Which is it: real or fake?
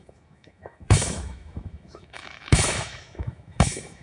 fake